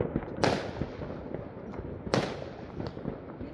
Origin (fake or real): real